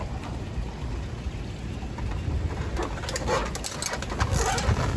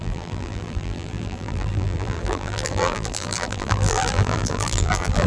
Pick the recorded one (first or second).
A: first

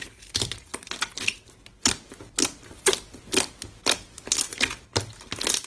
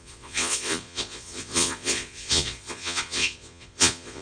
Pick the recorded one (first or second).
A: first